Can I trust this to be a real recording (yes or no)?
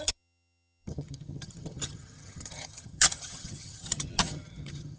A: no